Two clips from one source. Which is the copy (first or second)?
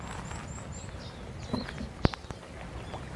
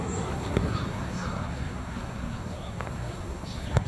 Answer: second